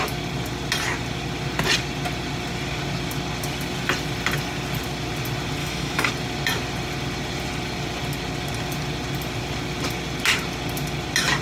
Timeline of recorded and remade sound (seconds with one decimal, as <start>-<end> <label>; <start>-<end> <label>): 0.0-5.6 recorded; 5.6-6.1 remade; 6.1-11.4 recorded